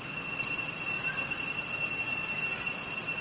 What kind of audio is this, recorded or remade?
recorded